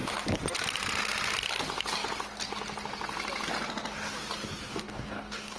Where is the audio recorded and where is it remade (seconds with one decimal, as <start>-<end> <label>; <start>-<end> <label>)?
0.0-4.6 recorded; 4.6-5.6 remade